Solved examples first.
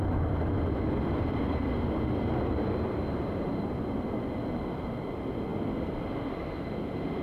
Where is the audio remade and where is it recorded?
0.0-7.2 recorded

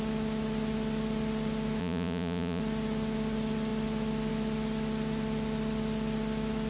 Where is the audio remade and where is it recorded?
0.0-1.8 recorded; 1.8-2.6 remade; 2.6-6.7 recorded

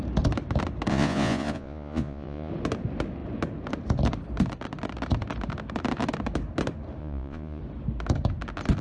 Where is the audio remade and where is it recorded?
0.0-0.9 recorded; 0.9-2.5 remade; 2.5-7.0 recorded; 7.0-7.6 remade; 7.6-8.8 recorded

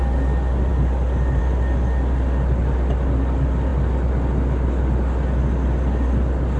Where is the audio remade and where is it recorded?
0.0-6.6 recorded

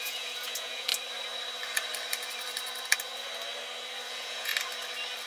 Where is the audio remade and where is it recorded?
0.0-0.9 remade; 0.9-4.1 recorded; 4.1-4.5 remade; 4.5-5.3 recorded

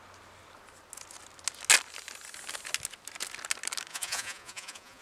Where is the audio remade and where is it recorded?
0.0-3.9 recorded; 3.9-5.0 remade

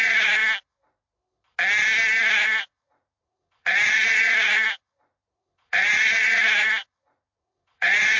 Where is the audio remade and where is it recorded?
0.0-0.4 remade; 0.4-2.2 recorded; 2.2-8.2 remade